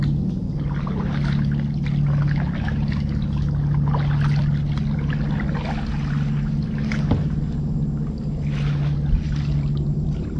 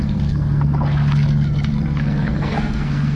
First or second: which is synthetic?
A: second